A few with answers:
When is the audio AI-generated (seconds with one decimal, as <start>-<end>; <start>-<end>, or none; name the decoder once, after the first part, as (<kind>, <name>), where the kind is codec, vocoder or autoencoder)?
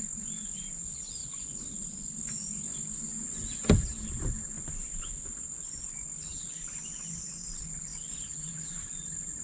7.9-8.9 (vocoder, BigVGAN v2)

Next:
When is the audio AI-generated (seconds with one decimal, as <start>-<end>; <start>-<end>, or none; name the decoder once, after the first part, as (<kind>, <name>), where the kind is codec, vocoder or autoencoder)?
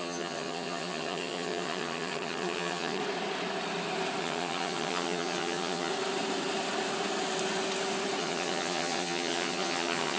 0.0-3.0 (vocoder, HiFi-GAN); 4.2-5.9; 8.2-10.2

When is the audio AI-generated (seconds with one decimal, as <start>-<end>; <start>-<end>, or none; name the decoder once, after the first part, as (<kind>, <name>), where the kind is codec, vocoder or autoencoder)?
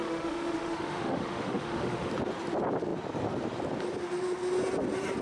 0.0-2.1 (autoencoder, DAC-VAE)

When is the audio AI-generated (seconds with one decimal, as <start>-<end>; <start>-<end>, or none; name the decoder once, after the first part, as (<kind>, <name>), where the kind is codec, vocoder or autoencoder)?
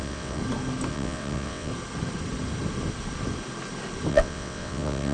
0.0-0.4 (vocoder, WaveNeXt); 0.9-1.7; 4.1-5.1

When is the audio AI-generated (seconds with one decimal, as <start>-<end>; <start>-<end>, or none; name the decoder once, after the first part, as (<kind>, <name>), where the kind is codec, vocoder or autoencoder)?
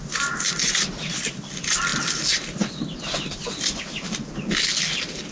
none